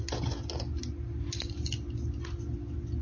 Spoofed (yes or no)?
no